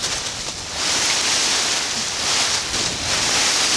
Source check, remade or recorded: recorded